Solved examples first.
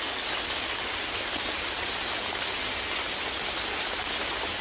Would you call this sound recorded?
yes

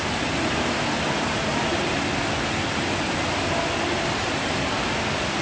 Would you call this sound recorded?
yes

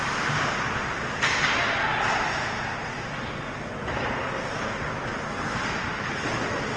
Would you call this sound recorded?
yes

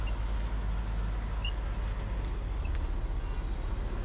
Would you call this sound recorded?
yes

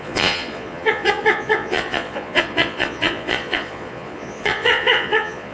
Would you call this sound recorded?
no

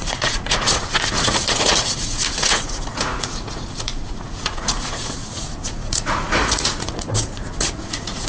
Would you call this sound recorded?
no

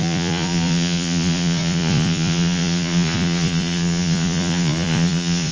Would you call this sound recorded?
no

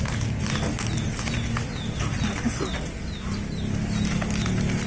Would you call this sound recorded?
yes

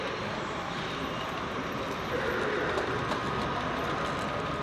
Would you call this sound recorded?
yes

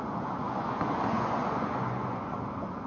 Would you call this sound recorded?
no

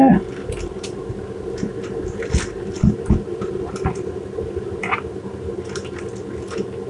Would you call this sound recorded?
yes